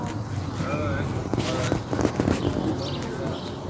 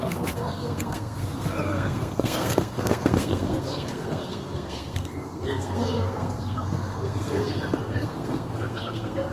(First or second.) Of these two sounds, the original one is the first